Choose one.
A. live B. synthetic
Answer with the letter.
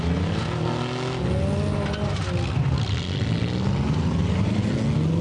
A